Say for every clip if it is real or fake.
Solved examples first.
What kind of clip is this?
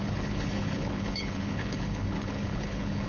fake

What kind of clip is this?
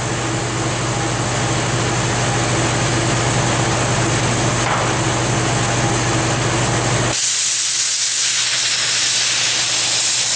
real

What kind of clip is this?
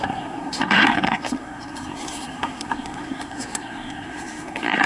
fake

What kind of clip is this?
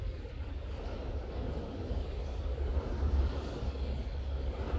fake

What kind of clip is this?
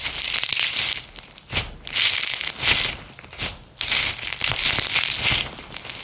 real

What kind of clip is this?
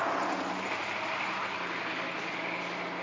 real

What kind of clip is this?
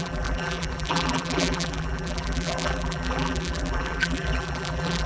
fake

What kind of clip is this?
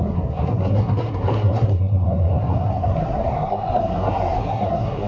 fake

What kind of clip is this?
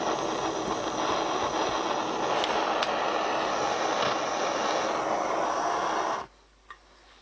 real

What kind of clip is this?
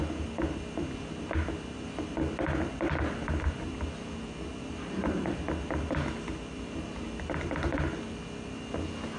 real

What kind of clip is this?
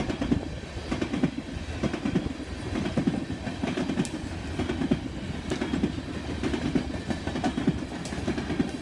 real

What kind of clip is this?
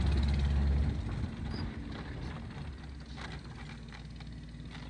real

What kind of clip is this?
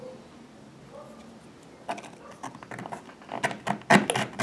real